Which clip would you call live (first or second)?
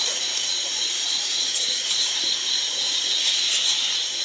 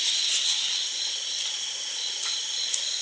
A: second